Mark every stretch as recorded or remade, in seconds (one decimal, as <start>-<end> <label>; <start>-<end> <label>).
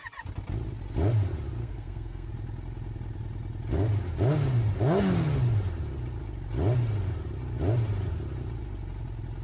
0.0-1.6 recorded; 1.6-2.3 remade; 2.3-9.4 recorded